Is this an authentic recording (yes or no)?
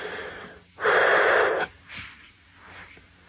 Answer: yes